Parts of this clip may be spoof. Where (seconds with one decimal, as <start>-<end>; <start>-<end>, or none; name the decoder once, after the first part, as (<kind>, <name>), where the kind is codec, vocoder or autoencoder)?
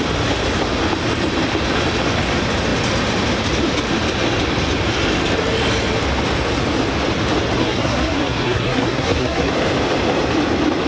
7.6-9.5 (codec, SNAC)